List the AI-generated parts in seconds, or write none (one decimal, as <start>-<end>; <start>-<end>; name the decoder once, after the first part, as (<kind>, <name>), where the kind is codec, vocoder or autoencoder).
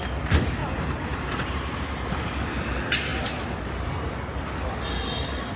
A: 0.6-2.1 (vocoder, BigVGAN v2); 3.1-3.9